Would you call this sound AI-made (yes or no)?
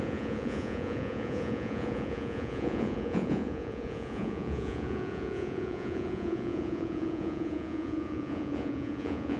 yes